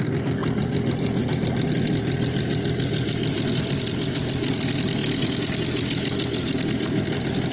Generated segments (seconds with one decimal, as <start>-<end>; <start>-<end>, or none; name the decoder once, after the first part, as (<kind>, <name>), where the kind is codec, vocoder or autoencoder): 0.0-0.4 (vocoder, BigVGAN v2); 1.2-5.0